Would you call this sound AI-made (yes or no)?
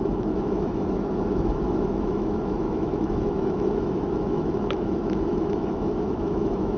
yes